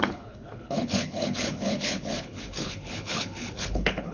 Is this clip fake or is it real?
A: fake